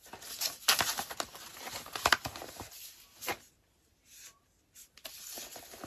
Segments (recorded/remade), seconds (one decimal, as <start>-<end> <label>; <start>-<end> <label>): 0.0-5.9 recorded